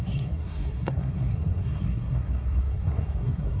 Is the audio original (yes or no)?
no